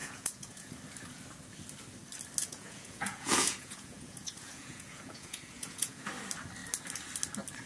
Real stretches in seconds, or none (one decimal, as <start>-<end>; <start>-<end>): 0.7-2.4; 6.1-7.7